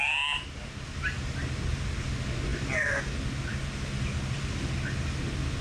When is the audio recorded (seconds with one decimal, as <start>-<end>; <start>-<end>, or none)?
0.0-5.6